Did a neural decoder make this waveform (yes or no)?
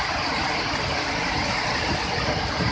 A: no